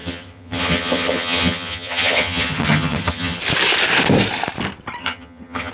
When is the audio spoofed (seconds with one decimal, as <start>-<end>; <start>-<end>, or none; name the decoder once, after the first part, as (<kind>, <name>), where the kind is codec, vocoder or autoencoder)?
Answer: 0.0-3.4 (vocoder, HiFi-GAN); 5.0-5.7